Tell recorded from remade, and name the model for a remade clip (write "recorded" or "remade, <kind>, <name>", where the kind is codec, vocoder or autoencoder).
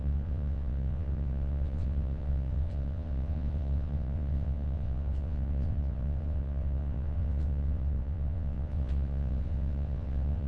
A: remade, vocoder, WaveNeXt